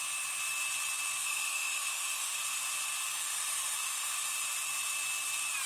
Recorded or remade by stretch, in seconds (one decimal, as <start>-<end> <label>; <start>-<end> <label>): 0.0-1.2 recorded; 1.2-2.4 remade; 2.4-3.1 recorded; 3.1-4.3 remade; 4.3-5.7 recorded